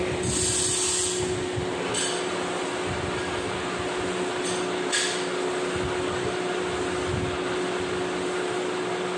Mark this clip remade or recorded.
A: recorded